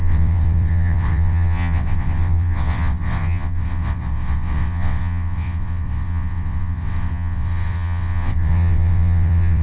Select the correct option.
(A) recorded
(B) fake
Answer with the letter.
B